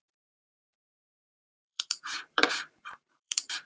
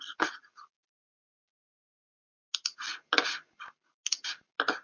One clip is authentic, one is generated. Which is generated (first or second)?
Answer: first